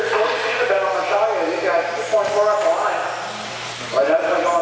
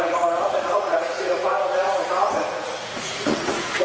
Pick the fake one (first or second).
second